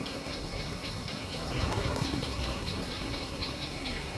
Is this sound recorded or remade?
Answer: remade